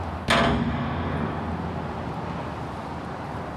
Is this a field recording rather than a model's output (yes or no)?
yes